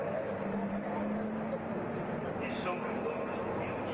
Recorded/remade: recorded